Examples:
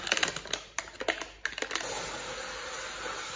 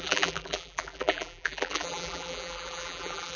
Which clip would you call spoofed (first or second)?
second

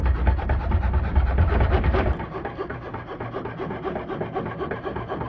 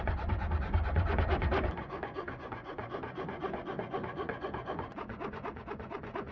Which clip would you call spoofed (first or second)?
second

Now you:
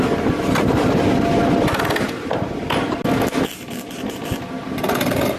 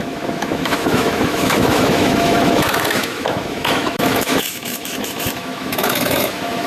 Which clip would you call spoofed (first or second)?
second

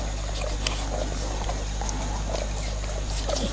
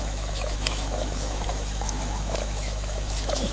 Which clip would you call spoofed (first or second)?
second